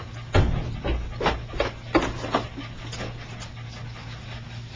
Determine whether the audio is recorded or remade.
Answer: recorded